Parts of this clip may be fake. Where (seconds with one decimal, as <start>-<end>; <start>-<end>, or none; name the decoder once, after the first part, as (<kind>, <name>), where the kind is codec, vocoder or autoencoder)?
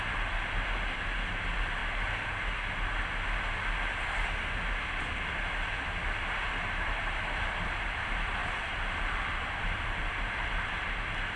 1.8-2.4 (vocoder, BigVGAN v2); 8.4-10.8